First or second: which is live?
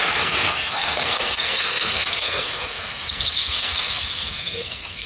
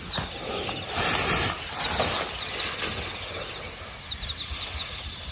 second